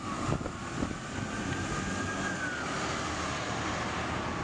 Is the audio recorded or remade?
recorded